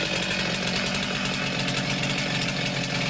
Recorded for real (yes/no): yes